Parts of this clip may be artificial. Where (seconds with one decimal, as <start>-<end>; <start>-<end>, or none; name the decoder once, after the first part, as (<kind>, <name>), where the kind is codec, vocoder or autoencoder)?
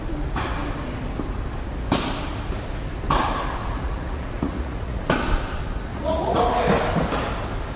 3.6-5.0 (vocoder, Vocos); 5.9-6.4